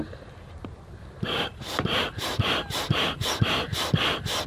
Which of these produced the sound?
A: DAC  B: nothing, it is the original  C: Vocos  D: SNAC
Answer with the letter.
B